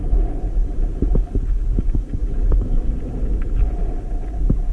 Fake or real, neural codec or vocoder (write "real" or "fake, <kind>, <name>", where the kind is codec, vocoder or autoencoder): real